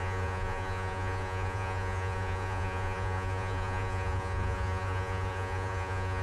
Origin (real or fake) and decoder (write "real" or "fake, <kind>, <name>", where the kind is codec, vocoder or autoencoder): fake, vocoder, Vocos